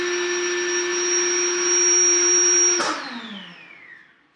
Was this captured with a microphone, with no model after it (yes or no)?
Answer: yes